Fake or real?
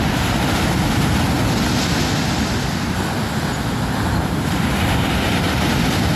real